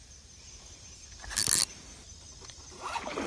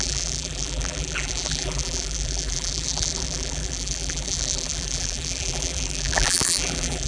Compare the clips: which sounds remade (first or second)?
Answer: second